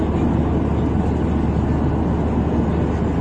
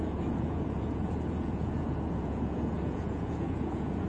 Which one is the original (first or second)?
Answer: first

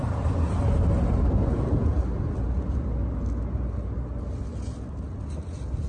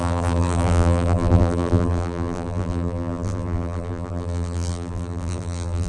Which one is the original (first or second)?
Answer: first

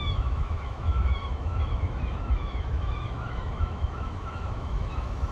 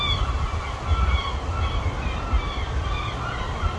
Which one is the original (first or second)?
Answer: second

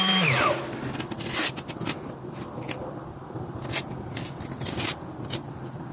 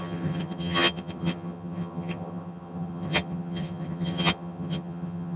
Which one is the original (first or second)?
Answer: first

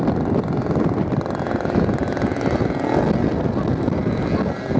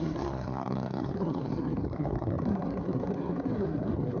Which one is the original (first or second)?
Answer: first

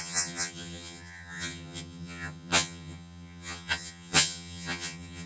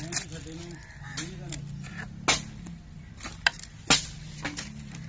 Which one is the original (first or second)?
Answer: second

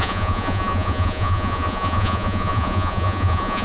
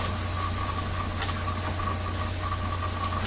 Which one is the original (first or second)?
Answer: second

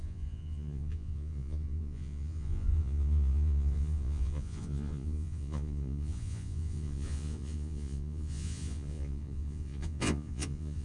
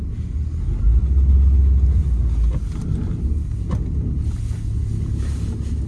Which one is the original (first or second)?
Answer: second